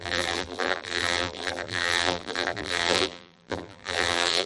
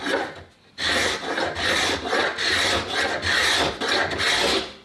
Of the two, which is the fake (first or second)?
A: first